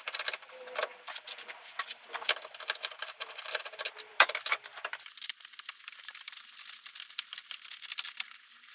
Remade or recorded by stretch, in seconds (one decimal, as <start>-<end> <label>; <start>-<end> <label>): 0.0-8.7 recorded